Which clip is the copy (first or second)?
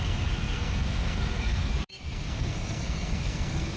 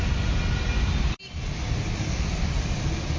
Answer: first